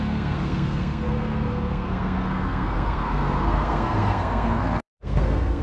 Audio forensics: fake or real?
fake